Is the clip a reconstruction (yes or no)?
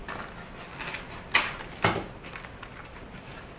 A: no